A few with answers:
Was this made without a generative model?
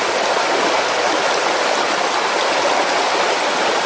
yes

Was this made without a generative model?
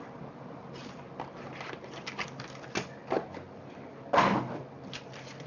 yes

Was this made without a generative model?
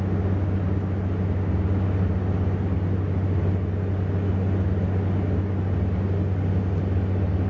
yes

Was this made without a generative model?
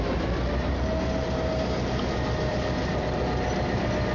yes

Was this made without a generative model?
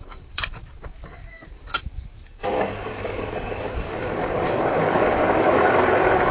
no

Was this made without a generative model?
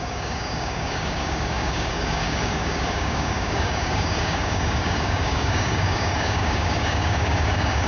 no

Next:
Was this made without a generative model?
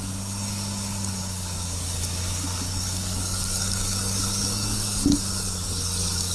no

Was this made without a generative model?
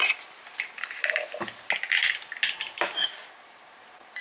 yes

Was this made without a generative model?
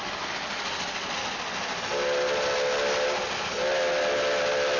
yes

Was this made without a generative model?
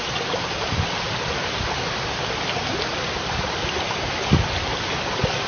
yes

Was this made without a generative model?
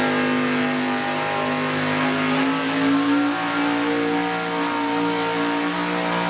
yes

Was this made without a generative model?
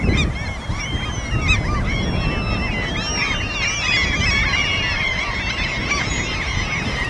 yes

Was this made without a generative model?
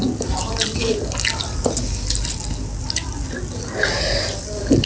yes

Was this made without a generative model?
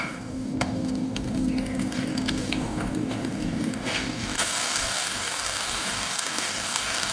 no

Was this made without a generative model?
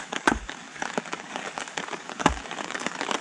no